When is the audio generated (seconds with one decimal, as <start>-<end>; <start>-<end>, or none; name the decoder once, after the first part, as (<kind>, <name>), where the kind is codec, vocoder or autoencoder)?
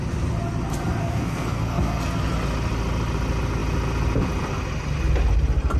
1.0-2.0 (codec, SNAC)